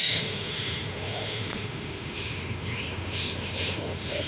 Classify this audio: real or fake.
fake